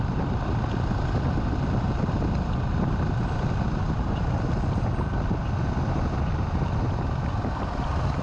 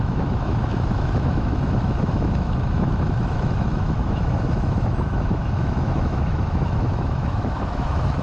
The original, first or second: first